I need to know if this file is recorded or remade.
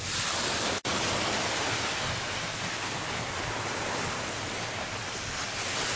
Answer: recorded